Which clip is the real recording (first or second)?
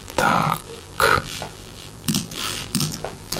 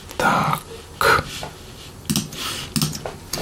second